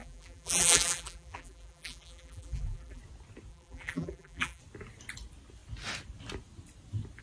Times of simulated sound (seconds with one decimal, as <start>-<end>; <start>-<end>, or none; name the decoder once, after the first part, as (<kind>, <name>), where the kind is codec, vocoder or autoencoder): 0.0-3.0 (vocoder, BigVGAN v2); 3.5-4.6